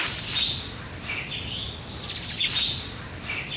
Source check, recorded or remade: recorded